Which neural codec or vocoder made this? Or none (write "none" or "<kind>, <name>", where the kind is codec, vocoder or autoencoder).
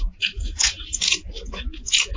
none